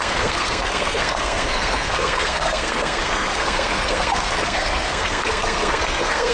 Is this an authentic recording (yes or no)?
no